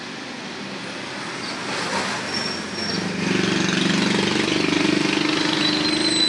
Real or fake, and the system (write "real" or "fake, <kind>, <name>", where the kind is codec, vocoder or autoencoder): real